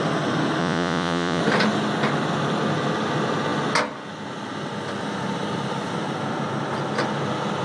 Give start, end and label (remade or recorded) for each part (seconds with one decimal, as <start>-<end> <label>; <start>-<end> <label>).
0.0-0.6 recorded; 0.6-1.4 remade; 1.4-7.6 recorded